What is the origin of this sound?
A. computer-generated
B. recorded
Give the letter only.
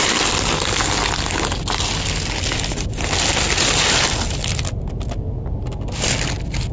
B